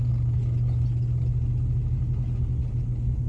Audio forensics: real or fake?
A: real